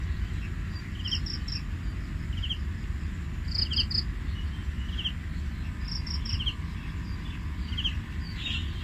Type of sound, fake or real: real